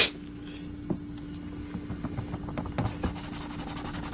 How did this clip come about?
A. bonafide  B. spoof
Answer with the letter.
A